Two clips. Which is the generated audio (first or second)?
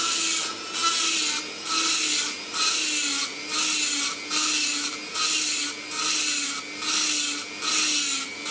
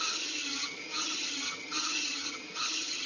second